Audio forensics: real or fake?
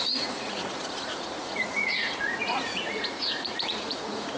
fake